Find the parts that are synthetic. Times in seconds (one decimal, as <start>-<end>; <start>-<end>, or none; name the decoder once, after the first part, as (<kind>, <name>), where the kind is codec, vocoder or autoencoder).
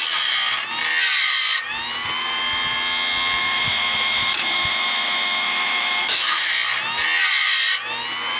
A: 3.4-6.4 (autoencoder, DAC-VAE)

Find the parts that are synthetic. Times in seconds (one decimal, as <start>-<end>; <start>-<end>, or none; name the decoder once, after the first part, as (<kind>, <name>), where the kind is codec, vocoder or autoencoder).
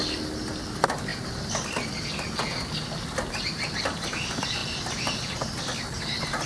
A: 4.6-5.1 (vocoder, BigVGAN v2)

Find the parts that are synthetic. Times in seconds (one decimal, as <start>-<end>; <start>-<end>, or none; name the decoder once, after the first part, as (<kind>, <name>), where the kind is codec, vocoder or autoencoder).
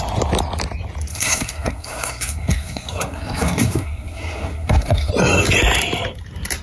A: 1.1-5.1 (codec, SNAC)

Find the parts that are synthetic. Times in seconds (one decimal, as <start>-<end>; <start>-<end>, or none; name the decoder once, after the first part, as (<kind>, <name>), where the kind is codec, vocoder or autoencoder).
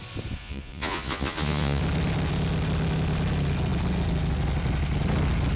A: 0.4-1.8 (vocoder, Vocos)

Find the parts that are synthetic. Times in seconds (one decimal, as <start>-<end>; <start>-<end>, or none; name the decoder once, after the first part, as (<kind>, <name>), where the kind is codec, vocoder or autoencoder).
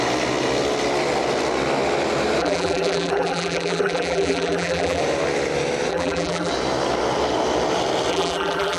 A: 2.4-5.0 (vocoder, BigVGAN v2); 5.9-6.5; 8.1-8.8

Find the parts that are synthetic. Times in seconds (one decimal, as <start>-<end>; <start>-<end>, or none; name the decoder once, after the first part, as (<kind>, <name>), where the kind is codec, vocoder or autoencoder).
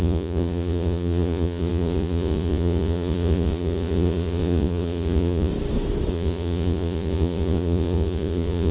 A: 0.0-5.5 (vocoder, Vocos); 6.1-8.7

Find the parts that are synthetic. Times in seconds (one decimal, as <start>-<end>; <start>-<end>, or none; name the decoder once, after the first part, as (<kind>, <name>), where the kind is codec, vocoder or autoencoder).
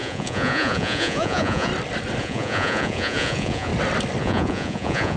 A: 0.0-1.7 (vocoder, Vocos); 2.2-3.7; 4.2-5.2